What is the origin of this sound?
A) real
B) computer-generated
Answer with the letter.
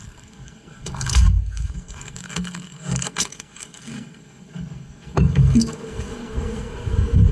B